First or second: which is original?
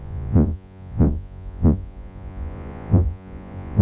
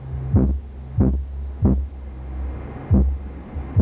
second